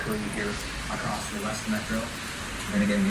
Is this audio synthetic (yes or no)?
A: no